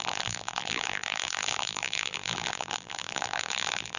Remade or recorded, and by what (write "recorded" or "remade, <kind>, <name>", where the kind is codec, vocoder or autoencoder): remade, vocoder, BigVGAN v2